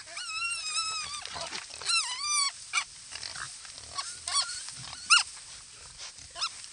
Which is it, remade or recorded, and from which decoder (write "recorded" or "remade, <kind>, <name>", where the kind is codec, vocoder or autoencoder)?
recorded